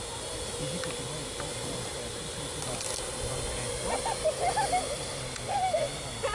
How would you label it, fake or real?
real